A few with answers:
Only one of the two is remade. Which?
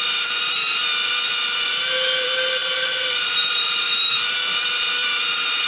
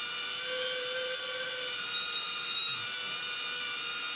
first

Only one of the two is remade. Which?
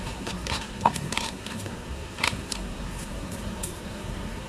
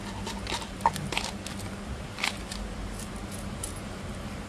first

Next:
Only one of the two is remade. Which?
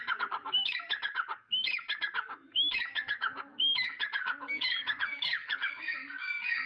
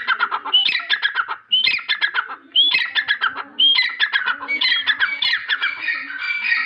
first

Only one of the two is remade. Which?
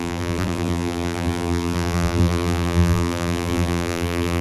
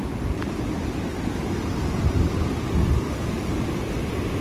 first